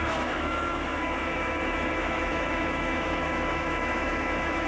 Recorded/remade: remade